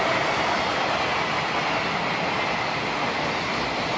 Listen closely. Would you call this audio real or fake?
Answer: real